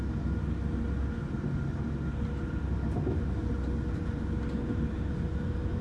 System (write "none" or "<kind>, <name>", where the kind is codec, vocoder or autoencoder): none